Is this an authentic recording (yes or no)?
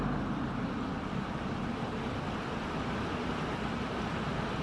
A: yes